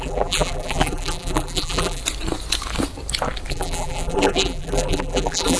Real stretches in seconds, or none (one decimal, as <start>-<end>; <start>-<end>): 2.0-3.5